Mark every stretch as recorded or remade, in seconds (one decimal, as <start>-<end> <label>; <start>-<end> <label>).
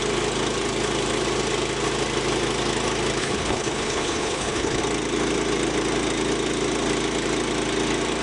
0.0-3.2 recorded; 3.2-4.8 remade; 4.8-8.2 recorded